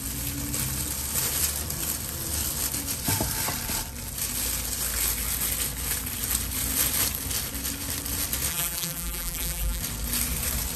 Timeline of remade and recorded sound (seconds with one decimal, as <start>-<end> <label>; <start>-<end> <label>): 0.0-8.5 recorded; 8.5-9.8 remade; 9.8-10.8 recorded